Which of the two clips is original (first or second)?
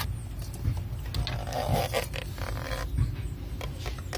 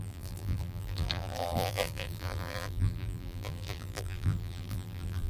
first